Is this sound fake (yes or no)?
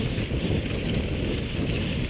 no